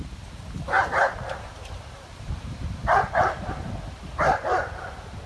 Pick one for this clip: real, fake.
fake